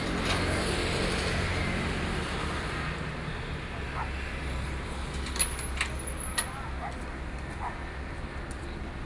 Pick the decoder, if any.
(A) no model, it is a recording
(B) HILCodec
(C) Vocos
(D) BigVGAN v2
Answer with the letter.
A